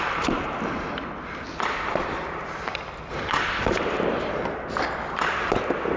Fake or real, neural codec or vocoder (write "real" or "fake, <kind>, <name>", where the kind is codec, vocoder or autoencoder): real